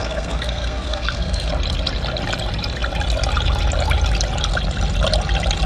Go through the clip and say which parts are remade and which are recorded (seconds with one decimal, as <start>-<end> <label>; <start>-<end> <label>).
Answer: 0.0-1.5 remade; 1.5-5.7 recorded